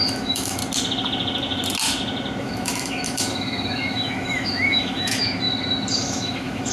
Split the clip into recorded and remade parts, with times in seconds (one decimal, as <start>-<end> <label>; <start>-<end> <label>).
0.0-0.6 remade; 0.6-2.4 recorded; 2.4-5.2 remade; 5.2-5.9 recorded; 5.9-6.7 remade